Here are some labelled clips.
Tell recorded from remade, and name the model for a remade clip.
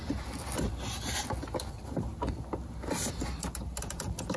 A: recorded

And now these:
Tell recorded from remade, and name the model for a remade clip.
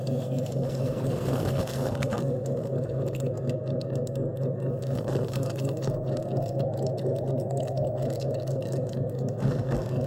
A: remade, codec, SNAC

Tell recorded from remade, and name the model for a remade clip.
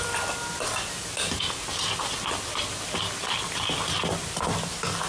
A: recorded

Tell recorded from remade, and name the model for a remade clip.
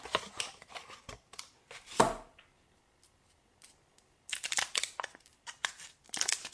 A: recorded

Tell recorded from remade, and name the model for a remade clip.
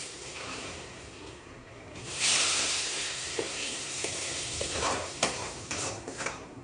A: remade, codec, SNAC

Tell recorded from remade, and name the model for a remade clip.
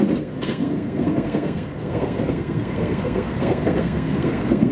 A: remade, codec, SNAC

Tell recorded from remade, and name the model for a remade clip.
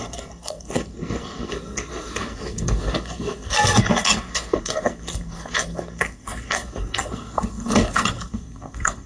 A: remade, codec, SNAC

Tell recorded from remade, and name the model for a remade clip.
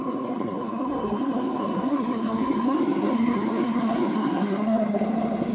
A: remade, codec, SNAC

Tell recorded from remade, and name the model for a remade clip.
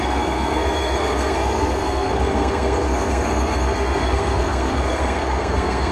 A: remade, codec, SNAC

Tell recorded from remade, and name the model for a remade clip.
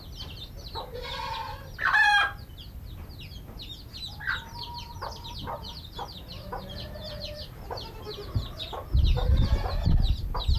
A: recorded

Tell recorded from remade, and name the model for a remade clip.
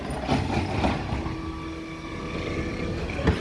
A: recorded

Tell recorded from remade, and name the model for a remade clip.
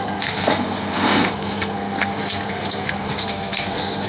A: remade, codec, SNAC